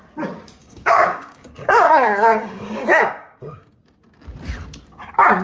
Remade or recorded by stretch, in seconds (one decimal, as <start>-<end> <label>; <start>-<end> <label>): 0.0-0.6 recorded; 0.6-3.8 remade; 3.8-5.4 recorded